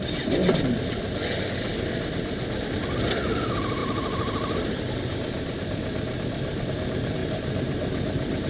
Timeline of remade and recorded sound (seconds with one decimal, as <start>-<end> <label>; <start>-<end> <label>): 0.0-3.8 recorded; 3.8-6.7 remade; 6.7-7.2 recorded; 7.2-8.5 remade